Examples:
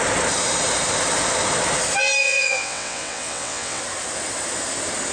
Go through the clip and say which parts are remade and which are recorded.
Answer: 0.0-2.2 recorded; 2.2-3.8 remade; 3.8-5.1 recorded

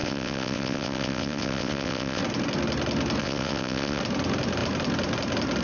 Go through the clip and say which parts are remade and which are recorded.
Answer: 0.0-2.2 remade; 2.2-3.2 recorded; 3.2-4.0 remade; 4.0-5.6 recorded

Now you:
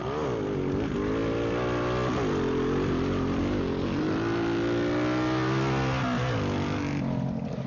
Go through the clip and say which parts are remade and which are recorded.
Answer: 0.0-7.7 recorded

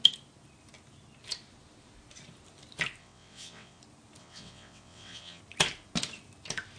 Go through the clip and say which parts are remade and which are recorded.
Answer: 0.0-3.0 recorded; 3.0-3.8 remade; 3.8-4.2 recorded; 4.2-5.4 remade; 5.4-6.8 recorded

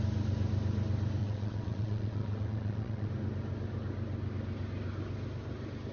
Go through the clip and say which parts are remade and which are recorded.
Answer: 0.0-1.2 recorded; 1.2-3.1 remade; 3.1-5.9 recorded

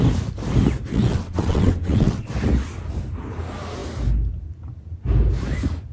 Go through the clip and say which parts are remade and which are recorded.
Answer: 0.0-0.9 recorded; 0.9-2.3 remade; 2.3-5.9 recorded